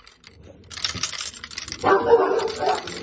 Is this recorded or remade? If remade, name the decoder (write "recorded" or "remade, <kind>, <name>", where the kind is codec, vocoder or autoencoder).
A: recorded